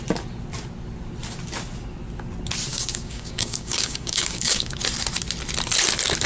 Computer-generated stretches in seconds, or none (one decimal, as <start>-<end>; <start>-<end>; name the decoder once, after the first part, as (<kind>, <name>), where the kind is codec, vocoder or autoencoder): 2.7-4.7 (codec, DAC)

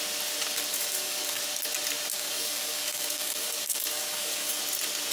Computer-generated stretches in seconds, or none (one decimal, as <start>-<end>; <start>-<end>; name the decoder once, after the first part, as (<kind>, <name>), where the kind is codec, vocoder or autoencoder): 0.7-1.4 (codec, DAC); 2.1-4.6